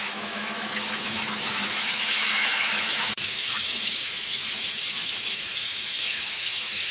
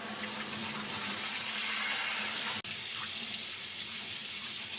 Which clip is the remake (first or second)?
first